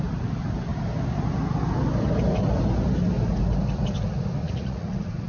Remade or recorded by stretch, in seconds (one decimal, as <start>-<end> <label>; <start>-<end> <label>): 0.0-4.4 recorded; 4.4-5.3 remade